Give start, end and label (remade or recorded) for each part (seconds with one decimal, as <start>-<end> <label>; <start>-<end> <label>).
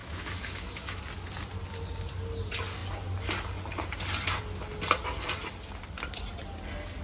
0.0-1.0 remade; 1.0-7.0 recorded